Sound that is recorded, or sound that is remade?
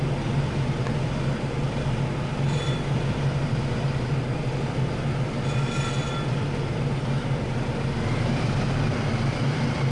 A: remade